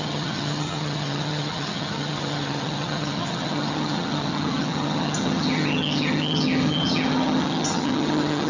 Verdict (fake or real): fake